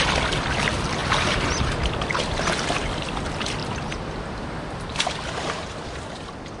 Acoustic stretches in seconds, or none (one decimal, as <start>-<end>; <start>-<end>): 0.0-1.0; 1.9-3.6; 5.6-6.6